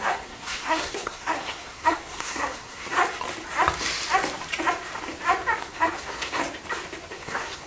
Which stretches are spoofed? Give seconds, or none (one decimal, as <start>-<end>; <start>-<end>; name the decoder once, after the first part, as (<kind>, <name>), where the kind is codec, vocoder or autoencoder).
0.0-3.0 (codec, SNAC); 5.6-6.4; 7.1-7.7